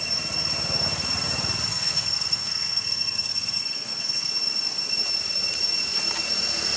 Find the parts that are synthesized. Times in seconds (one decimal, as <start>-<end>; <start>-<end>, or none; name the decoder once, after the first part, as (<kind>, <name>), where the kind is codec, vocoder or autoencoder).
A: 1.7-4.3 (codec, SNAC)